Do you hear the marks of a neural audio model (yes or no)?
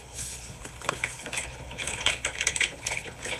yes